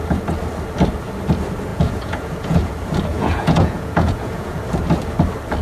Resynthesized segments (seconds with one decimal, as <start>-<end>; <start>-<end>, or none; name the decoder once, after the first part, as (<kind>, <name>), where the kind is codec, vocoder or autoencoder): 1.7-2.7 (vocoder, Vocos); 3.1-4.6